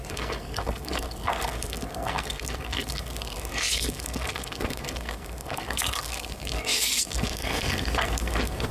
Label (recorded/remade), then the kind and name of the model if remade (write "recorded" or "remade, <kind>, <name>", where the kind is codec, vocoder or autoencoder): remade, codec, SNAC